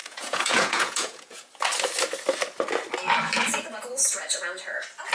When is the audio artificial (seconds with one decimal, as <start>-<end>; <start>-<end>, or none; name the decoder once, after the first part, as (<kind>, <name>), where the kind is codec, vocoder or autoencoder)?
0.0-1.5 (vocoder, Vocos)